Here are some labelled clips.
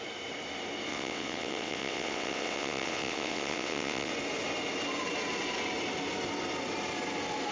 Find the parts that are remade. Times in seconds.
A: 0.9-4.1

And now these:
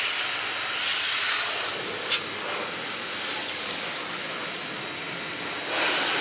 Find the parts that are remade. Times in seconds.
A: 3.4-4.2

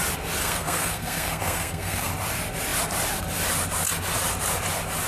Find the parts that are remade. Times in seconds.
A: 0.4-2.1

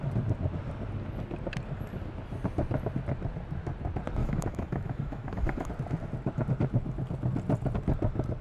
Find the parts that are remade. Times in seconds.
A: 4.2-5.7

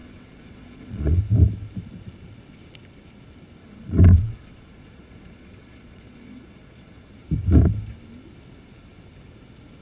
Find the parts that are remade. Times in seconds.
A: 0.0-1.2; 3.6-7.1